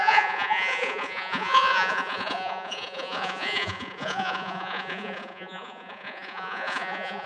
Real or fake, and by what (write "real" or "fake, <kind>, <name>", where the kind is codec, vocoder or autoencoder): fake, vocoder, Vocos